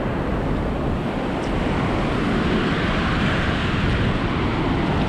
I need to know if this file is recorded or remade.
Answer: recorded